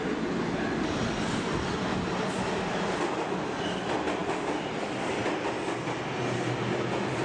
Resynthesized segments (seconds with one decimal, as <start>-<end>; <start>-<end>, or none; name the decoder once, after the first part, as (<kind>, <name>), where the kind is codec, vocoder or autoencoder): none